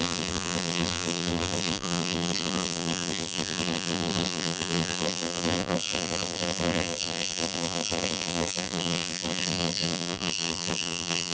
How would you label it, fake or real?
fake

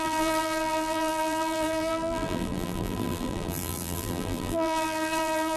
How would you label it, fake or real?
fake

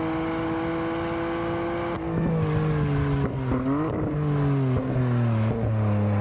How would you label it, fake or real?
real